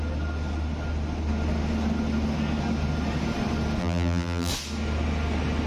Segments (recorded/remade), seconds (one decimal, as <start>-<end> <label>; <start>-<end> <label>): 0.0-3.8 recorded; 3.8-4.5 remade; 4.5-5.7 recorded